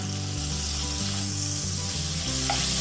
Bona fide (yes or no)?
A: yes